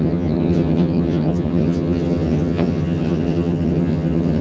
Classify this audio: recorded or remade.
remade